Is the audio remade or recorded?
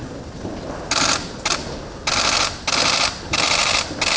recorded